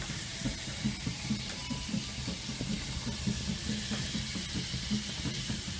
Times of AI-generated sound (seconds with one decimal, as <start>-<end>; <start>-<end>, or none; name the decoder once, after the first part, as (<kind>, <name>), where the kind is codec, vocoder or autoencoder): 0.0-1.6 (vocoder, BigVGAN v2); 5.1-5.8